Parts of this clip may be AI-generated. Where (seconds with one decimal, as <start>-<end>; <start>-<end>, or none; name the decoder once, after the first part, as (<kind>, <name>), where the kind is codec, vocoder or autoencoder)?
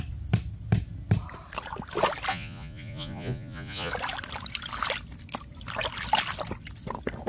2.3-3.9 (vocoder, Vocos)